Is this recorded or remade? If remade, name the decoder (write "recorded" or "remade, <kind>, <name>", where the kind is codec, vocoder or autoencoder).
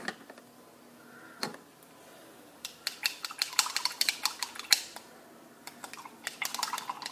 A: recorded